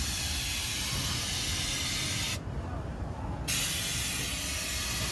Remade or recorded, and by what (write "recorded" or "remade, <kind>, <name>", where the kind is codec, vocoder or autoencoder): recorded